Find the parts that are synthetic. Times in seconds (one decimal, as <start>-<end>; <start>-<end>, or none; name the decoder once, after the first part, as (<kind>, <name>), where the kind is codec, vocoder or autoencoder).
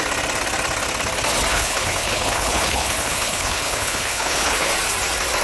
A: 1.5-4.7 (codec, HILCodec)